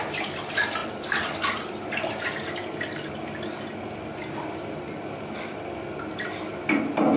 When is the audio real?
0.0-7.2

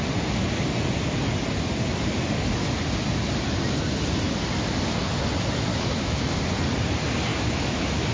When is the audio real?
0.0-5.7; 6.4-7.3